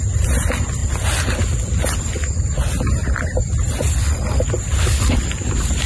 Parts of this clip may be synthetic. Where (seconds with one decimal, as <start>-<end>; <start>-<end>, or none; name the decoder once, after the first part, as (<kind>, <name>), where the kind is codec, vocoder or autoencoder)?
none